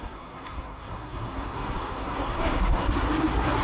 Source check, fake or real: fake